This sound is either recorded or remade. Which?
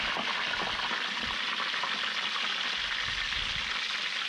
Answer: recorded